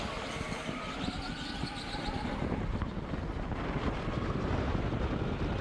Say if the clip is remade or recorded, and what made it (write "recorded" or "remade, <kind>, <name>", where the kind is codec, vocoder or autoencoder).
recorded